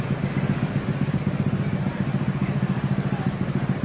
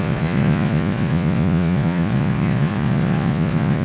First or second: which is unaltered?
first